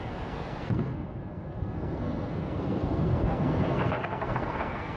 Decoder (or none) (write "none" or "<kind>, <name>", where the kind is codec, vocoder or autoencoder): codec, SNAC